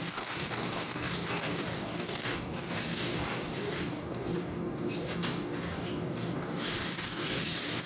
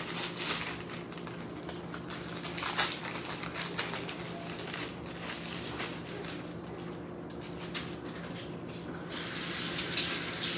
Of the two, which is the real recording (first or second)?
second